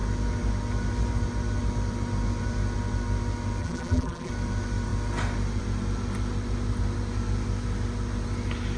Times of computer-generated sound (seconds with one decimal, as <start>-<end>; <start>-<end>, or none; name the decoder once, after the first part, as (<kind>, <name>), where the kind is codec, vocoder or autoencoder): 3.6-4.3 (vocoder, BigVGAN v2)